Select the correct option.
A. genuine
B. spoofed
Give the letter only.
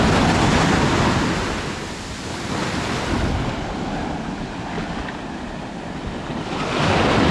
A